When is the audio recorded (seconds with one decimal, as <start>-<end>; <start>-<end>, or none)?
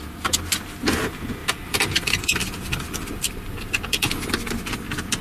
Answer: 0.0-1.4; 4.1-5.2